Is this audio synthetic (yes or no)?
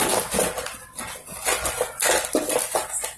no